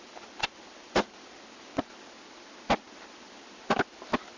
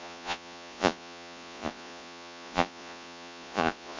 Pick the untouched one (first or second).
first